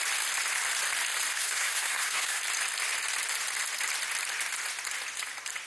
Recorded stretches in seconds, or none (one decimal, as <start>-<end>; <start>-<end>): 0.0-1.3; 2.4-5.7